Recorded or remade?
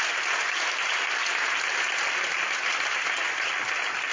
recorded